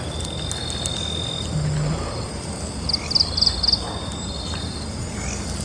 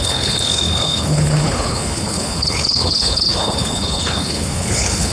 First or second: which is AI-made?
second